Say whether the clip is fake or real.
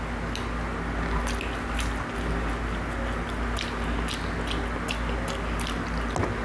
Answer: real